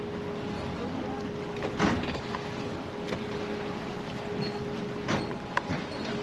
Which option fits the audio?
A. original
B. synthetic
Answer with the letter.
A